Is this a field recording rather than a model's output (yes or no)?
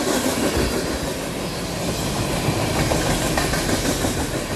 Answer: yes